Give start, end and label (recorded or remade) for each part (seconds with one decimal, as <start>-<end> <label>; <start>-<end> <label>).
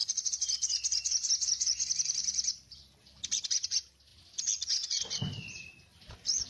0.0-3.4 remade; 3.4-6.5 recorded